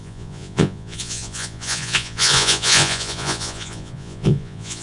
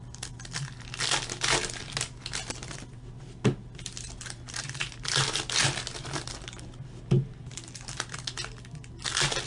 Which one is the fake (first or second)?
first